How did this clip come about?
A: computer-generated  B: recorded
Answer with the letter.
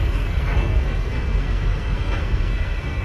A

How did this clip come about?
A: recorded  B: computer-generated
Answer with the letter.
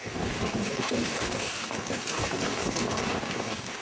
B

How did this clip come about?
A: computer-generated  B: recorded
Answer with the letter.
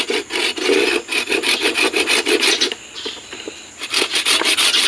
B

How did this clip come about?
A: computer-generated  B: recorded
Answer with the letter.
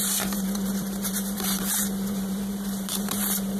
A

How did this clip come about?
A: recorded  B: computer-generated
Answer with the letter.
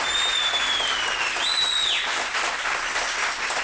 A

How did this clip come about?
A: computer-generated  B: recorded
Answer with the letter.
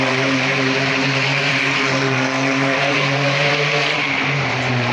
A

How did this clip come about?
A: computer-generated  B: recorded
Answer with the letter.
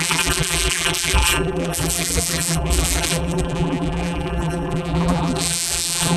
A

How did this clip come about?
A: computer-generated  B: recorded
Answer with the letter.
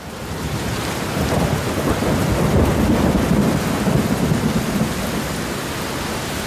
B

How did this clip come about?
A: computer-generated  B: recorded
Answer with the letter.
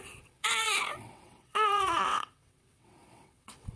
A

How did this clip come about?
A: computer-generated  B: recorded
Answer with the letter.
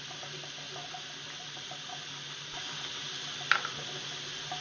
B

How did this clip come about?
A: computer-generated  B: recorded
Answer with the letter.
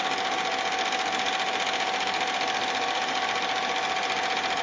B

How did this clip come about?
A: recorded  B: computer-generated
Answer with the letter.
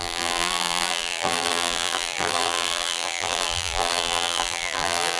B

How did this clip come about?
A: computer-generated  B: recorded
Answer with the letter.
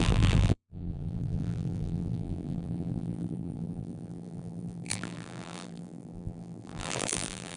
A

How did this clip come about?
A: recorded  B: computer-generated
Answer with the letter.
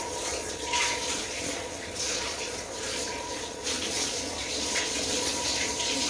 B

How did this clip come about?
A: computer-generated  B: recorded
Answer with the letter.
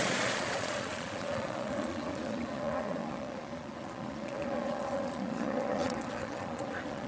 A